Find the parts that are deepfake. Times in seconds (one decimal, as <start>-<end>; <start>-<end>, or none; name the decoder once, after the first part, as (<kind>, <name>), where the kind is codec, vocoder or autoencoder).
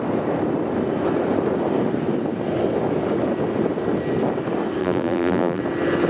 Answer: 4.8-5.6 (vocoder, BigVGAN v2)